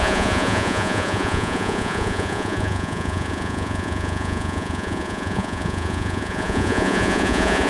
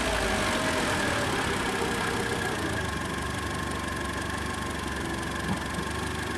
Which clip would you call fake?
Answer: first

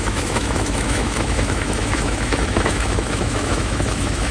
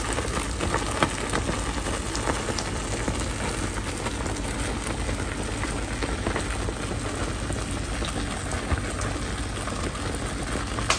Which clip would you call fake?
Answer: first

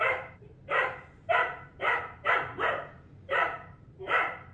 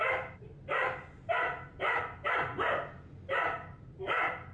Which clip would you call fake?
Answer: first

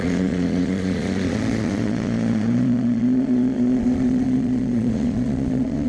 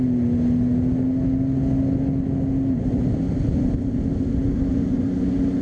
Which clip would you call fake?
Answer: first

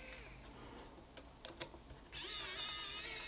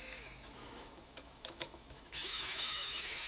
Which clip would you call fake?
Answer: second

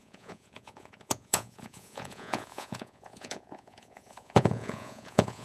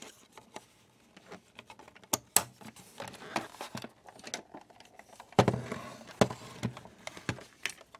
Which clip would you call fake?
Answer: first